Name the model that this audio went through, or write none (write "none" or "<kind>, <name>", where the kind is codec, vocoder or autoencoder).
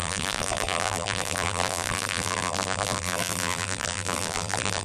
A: vocoder, BigVGAN v2